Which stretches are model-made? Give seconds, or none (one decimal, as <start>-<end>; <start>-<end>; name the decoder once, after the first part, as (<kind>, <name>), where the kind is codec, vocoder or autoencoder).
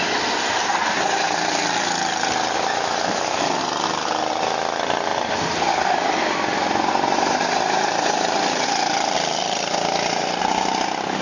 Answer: none